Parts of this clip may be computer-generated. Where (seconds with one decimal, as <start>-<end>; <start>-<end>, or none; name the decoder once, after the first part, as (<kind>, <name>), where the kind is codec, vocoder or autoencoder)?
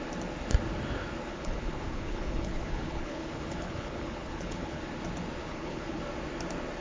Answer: 1.3-4.8 (codec, HILCodec); 5.4-6.0